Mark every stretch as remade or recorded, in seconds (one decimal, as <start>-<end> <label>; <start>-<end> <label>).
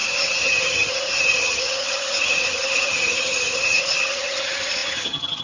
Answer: 0.0-5.4 remade